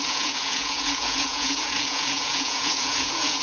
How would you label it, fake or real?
fake